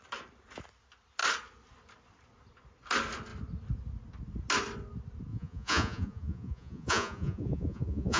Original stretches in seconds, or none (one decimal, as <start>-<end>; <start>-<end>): 0.0-5.3